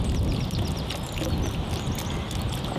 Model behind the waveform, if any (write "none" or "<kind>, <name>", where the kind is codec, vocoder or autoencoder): none